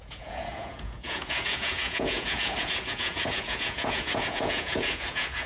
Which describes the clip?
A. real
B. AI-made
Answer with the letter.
B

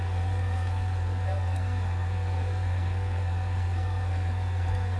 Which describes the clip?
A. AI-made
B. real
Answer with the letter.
A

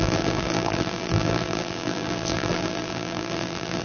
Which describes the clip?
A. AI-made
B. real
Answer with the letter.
A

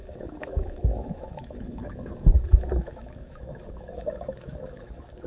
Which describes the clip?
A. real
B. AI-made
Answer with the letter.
B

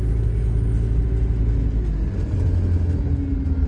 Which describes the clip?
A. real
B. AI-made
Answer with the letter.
A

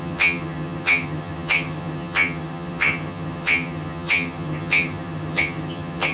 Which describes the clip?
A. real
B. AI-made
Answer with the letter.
B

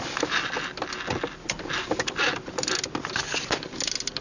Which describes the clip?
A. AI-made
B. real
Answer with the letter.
B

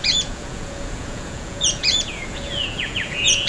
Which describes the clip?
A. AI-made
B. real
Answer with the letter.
A